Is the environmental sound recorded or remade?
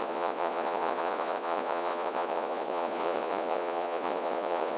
remade